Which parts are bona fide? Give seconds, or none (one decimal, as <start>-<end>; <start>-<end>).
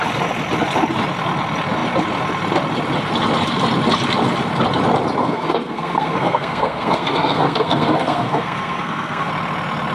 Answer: 0.0-5.2; 9.3-9.9